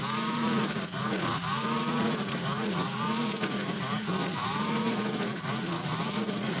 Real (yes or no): no